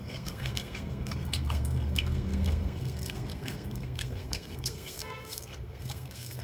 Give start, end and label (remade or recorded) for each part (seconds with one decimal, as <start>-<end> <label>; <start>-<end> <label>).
0.0-6.4 remade